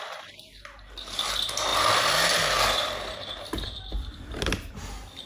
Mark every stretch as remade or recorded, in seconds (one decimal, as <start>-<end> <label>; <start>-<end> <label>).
0.0-5.3 recorded